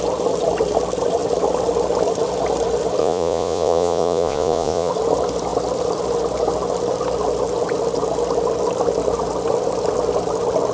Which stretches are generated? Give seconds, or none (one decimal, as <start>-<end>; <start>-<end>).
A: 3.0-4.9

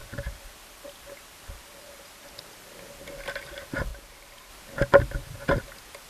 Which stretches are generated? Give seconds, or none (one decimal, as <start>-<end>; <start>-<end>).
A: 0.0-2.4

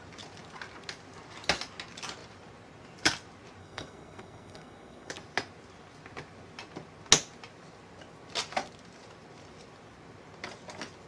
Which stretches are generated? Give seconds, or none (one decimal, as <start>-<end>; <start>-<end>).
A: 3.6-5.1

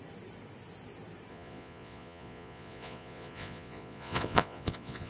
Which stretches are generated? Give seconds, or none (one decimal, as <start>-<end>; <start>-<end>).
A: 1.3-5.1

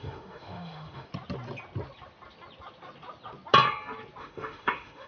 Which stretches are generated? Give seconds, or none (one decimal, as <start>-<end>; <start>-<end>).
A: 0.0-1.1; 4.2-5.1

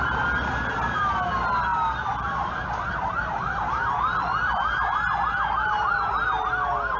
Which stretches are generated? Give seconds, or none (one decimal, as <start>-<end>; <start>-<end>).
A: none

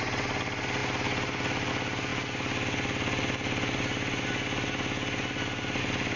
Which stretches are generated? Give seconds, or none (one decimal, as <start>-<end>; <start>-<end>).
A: none

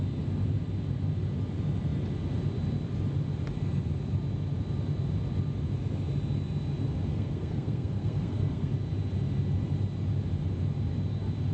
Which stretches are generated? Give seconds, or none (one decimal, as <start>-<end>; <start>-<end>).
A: 7.1-8.7